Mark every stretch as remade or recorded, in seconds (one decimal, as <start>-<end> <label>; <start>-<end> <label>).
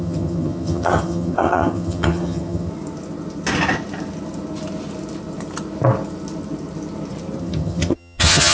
0.0-2.7 remade; 2.7-7.4 recorded; 7.4-8.5 remade